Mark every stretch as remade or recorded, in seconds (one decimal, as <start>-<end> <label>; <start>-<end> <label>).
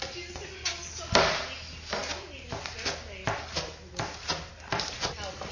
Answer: 0.0-5.5 recorded